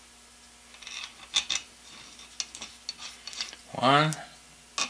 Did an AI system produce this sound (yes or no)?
no